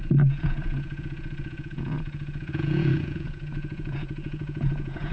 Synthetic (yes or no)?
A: yes